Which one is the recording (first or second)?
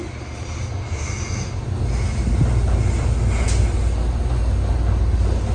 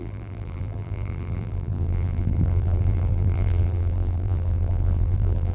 first